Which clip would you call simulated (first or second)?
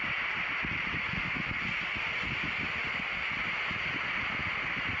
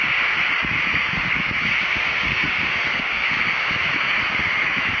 second